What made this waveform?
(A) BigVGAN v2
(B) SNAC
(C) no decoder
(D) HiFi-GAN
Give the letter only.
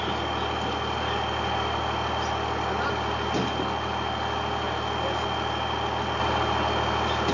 C